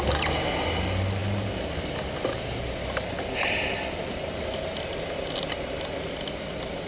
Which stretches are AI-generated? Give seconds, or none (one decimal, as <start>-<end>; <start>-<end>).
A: none